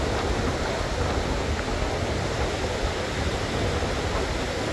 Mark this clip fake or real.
real